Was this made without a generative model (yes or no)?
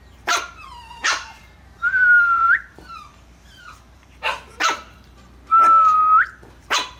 no